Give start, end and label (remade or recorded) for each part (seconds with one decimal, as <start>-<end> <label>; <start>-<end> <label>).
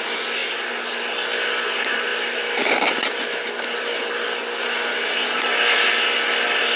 0.0-6.8 recorded